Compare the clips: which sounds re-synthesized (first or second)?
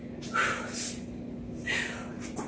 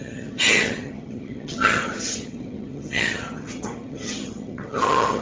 second